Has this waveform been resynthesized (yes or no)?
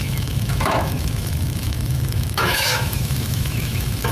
yes